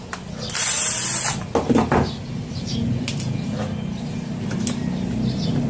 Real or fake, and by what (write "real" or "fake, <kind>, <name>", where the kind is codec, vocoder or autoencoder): real